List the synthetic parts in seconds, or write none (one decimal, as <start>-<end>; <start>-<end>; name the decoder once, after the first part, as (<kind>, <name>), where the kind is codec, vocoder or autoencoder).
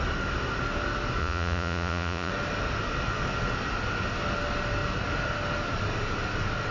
1.2-2.3 (vocoder, Vocos)